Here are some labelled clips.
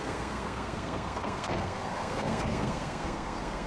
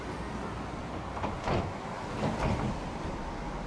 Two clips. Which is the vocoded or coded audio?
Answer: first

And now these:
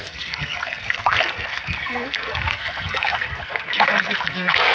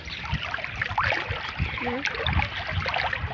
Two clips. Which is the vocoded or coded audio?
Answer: first